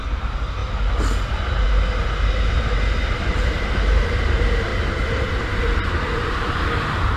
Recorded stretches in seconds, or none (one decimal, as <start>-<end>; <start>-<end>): 0.6-3.4; 4.7-5.3